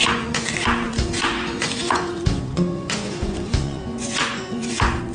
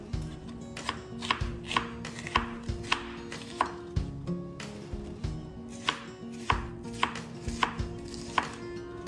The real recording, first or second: second